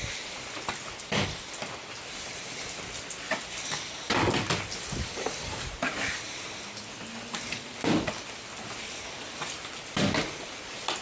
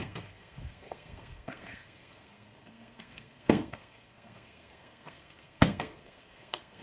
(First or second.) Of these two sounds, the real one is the first